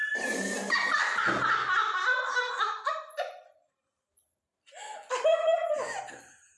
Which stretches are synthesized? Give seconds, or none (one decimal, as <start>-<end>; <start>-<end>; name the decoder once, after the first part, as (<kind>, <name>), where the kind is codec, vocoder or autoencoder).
0.0-0.7 (vocoder, BigVGAN v2); 1.8-4.7